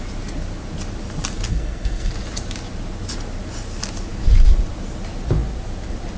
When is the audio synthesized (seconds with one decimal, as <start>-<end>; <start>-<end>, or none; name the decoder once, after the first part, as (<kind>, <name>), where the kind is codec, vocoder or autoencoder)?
1.5-2.1 (codec, SNAC)

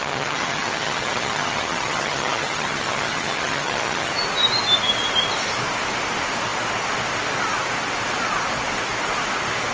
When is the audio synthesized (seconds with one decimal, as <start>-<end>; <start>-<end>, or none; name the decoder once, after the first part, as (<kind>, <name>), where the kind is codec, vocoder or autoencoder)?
0.0-4.1 (vocoder, HiFi-GAN)